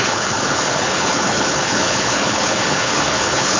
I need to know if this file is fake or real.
fake